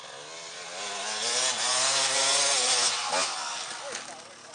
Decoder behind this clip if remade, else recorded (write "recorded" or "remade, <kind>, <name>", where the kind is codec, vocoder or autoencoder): recorded